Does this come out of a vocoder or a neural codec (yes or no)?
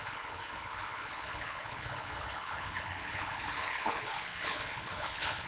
yes